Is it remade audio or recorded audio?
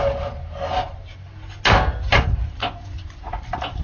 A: recorded